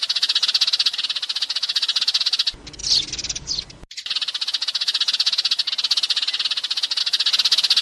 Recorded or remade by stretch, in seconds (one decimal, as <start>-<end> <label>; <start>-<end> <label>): 0.0-7.8 recorded